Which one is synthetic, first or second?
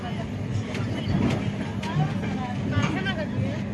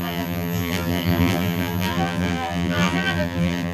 second